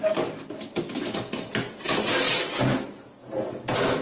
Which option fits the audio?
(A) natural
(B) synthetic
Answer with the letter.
A